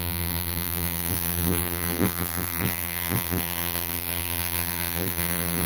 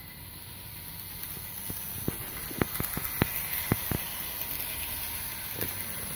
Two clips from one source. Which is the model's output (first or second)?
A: first